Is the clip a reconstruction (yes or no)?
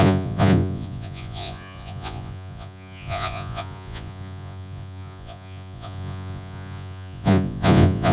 yes